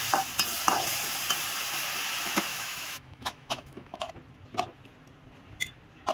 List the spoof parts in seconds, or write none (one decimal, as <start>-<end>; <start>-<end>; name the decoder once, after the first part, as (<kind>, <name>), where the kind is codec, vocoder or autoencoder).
2.5-4.1 (autoencoder, DAC-VAE)